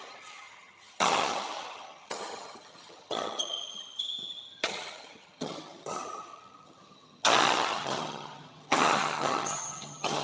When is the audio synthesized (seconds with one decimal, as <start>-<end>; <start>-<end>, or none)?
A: 0.0-10.2